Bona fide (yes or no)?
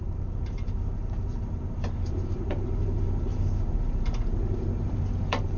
no